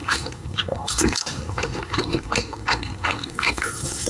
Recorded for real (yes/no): no